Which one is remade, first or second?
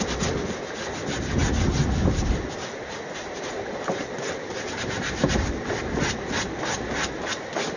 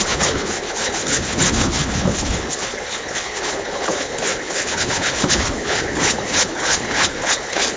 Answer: second